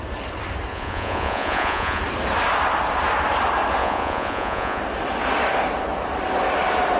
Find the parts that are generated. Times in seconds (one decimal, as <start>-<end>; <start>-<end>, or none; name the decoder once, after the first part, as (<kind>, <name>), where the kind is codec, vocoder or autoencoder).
0.7-2.0 (vocoder, Vocos); 3.8-4.8